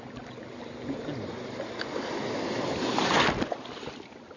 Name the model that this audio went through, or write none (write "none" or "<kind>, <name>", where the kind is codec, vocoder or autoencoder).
none